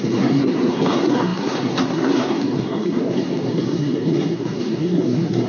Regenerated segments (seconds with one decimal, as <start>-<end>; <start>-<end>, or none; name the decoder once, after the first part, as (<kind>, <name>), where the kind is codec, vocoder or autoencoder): 0.0-5.5 (codec, SNAC)